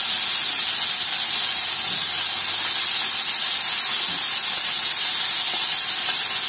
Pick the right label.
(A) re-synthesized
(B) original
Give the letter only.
B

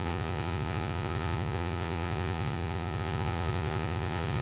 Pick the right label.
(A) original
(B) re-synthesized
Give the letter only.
B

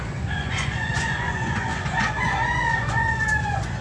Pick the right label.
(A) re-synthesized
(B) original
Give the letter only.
A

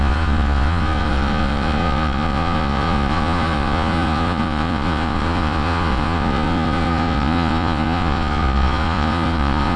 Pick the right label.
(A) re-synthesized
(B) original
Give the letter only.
A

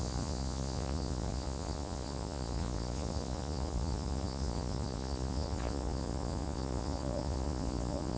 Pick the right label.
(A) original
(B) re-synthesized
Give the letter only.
B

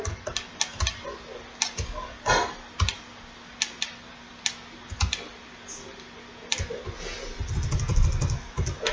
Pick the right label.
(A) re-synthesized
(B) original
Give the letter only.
B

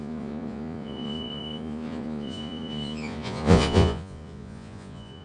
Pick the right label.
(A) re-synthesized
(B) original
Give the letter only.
A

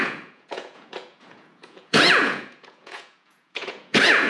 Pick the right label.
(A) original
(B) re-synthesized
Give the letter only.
B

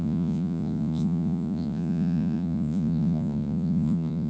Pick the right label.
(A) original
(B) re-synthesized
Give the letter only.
B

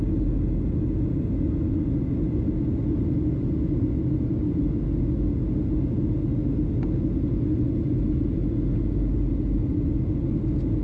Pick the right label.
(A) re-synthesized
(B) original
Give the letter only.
B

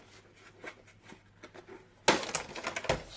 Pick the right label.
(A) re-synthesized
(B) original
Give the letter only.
B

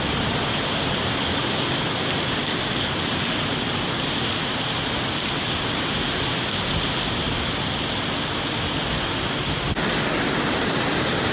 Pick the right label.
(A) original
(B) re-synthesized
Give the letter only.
A